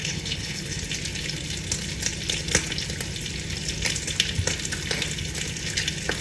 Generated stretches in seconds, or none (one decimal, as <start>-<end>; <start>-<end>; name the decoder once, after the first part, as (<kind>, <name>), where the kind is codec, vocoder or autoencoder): 0.0-0.8 (codec, HILCodec)